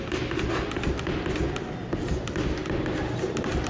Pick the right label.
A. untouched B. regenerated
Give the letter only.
A